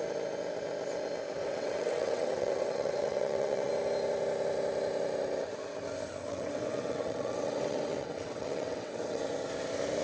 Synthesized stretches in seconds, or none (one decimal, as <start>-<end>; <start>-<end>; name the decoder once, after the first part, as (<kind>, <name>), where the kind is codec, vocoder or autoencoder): 1.4-3.7 (vocoder, WaveNeXt); 6.3-9.2